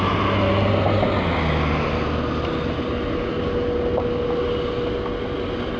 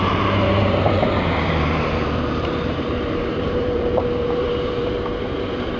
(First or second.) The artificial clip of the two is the second